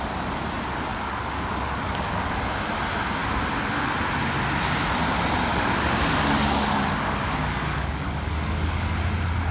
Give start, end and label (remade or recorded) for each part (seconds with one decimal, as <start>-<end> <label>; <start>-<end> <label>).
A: 0.0-0.9 recorded; 0.9-2.3 remade; 2.3-5.5 recorded; 5.5-9.0 remade; 9.0-9.5 recorded